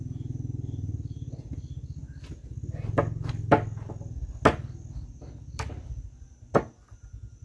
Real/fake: real